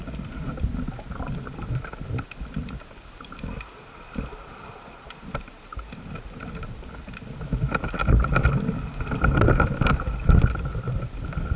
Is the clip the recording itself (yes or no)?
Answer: yes